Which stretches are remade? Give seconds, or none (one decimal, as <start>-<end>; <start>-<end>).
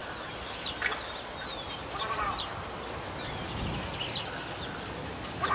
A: none